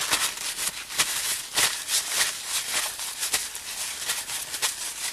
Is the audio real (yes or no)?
yes